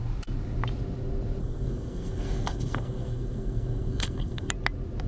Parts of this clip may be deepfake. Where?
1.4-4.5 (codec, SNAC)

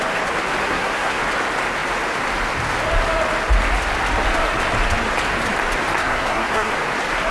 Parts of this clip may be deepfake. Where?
0.6-1.2 (codec, SNAC); 6.0-6.7

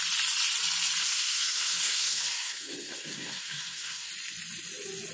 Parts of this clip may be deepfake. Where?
1.0-4.1 (codec, SNAC)

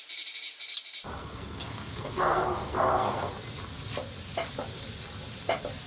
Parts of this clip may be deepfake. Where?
1.2-3.3 (codec, SNAC)

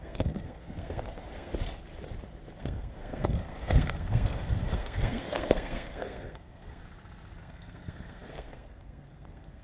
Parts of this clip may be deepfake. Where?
0.0-1.5 (codec, SNAC); 2.6-6.8; 7.4-9.6

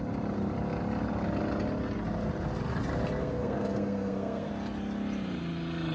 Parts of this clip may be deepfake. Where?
3.2-4.5 (codec, SNAC)

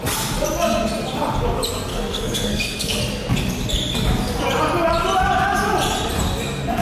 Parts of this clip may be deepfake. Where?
1.9-3.0 (codec, SNAC)

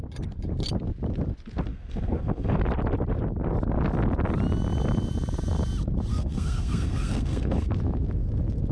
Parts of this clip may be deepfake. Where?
1.7-2.6 (codec, SNAC); 6.1-7.7